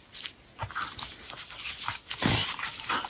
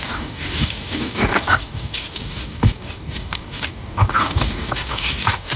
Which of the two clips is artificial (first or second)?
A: second